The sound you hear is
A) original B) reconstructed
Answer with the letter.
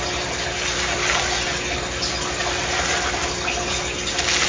A